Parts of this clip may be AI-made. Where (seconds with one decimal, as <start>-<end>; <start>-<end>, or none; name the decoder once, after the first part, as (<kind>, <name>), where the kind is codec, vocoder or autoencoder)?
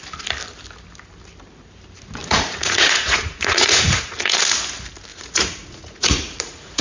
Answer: 2.2-4.4 (vocoder, Vocos); 5.1-6.8